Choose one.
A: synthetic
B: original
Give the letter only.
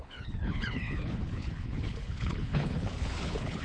A